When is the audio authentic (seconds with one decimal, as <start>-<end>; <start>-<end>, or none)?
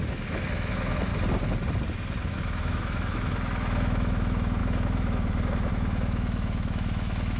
1.1-2.3